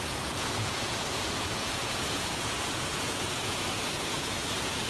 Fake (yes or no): yes